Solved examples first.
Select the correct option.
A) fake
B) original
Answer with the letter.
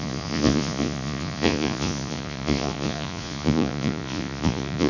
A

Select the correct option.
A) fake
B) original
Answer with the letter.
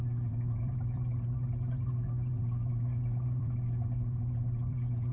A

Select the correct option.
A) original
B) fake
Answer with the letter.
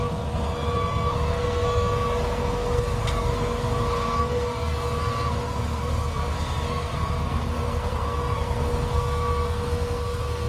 B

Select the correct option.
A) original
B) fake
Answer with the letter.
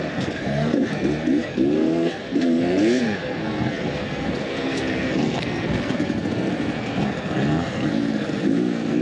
B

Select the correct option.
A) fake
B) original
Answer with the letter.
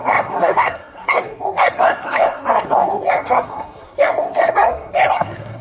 A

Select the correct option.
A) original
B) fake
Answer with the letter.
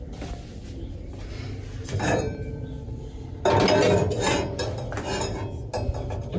A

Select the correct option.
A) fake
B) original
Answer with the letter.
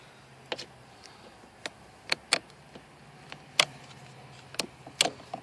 B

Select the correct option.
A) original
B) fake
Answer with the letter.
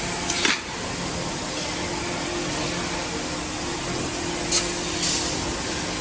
A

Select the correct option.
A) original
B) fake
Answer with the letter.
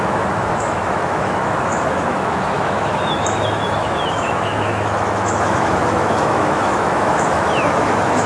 B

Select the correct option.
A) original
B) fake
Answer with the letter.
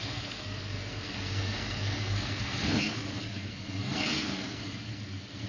B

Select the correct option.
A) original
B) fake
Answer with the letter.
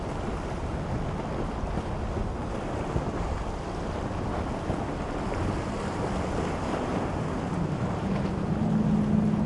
A